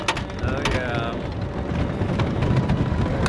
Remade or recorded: recorded